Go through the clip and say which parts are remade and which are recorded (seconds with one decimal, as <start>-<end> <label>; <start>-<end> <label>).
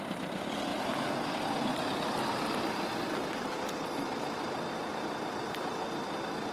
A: 0.0-6.5 recorded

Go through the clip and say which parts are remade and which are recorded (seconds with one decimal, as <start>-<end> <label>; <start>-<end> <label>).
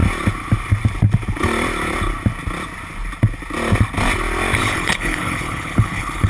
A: 0.0-4.6 recorded; 4.6-6.3 remade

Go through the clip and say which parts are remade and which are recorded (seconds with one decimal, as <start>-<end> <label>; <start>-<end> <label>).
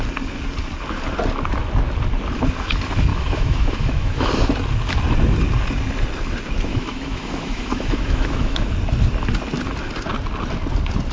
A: 0.0-3.1 recorded; 3.1-4.3 remade; 4.3-6.7 recorded; 6.7-8.7 remade; 8.7-11.1 recorded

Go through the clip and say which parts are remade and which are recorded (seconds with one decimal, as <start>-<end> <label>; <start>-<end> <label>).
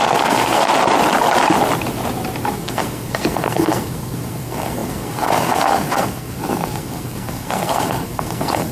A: 0.0-0.7 remade; 0.7-2.5 recorded; 2.5-8.7 remade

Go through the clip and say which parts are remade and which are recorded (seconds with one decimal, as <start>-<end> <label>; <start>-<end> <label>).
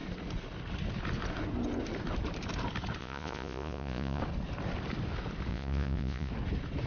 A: 0.0-3.0 recorded; 3.0-4.2 remade; 4.2-5.5 recorded; 5.5-6.3 remade; 6.3-6.9 recorded